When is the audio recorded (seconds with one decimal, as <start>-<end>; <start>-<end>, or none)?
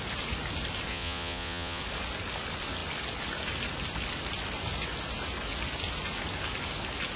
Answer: 0.0-0.9; 1.8-7.2